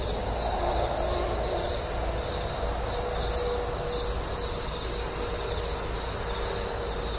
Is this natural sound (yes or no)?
yes